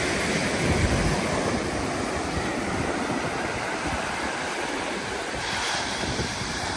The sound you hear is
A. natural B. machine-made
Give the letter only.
B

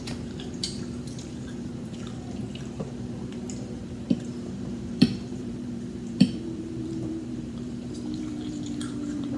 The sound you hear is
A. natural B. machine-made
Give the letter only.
B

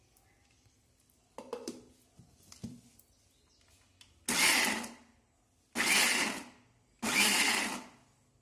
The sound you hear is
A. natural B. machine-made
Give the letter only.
A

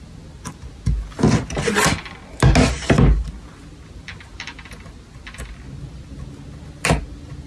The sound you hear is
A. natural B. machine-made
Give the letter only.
A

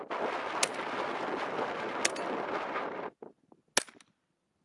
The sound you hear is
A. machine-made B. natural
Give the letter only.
B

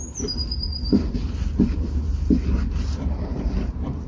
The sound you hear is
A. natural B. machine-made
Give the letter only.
B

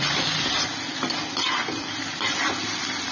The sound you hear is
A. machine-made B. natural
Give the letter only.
B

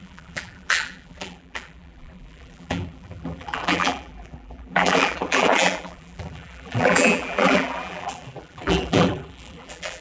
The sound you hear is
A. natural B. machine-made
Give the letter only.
B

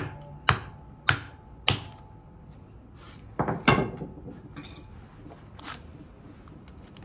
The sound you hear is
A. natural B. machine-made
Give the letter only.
A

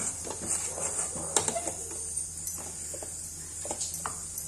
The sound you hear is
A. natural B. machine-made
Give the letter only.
A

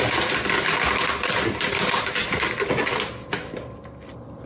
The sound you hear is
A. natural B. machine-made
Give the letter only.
A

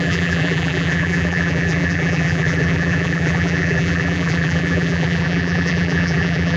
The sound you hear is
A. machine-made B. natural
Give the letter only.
A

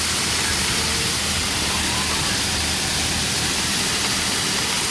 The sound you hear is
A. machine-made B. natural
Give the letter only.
B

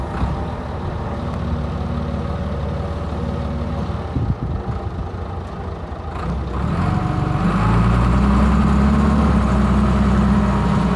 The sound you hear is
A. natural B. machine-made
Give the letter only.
A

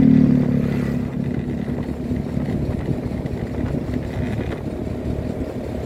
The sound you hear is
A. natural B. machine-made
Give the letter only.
A